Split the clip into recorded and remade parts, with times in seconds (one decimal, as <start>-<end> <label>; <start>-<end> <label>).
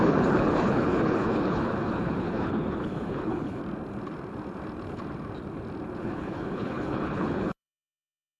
0.0-3.6 remade; 3.6-6.0 recorded; 6.0-8.4 remade